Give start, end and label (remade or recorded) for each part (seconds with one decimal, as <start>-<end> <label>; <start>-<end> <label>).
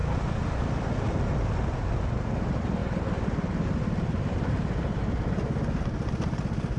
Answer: 0.0-0.9 remade; 0.9-2.8 recorded; 2.8-4.8 remade; 4.8-6.8 recorded